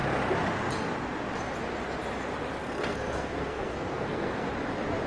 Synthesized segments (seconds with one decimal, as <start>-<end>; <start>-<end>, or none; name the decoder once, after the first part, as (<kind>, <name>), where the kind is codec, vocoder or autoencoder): 2.6-4.5 (codec, SNAC)